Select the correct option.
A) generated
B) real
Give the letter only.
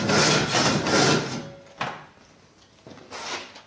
B